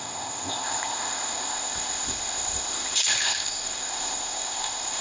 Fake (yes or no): yes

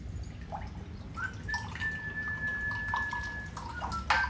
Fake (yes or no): no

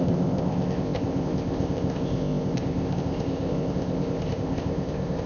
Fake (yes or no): yes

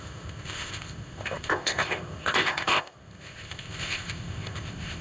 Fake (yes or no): yes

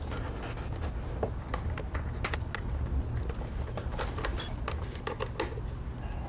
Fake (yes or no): no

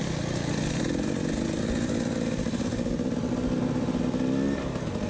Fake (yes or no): no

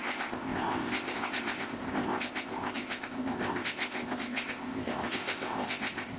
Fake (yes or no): yes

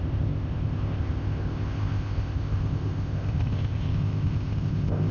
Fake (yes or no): yes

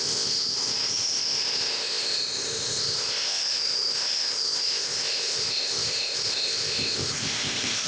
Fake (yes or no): yes